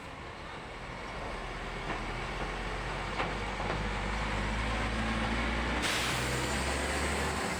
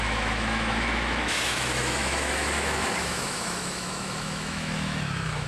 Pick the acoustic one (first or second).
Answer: first